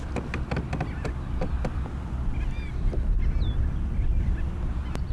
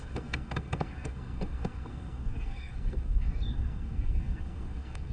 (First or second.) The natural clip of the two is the first